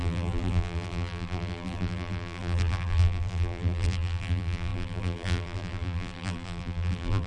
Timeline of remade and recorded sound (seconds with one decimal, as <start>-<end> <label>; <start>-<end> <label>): 0.0-7.3 remade